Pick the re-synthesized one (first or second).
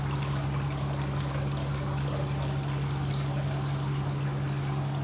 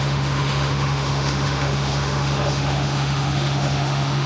second